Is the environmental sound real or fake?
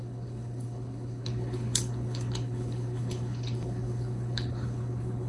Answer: fake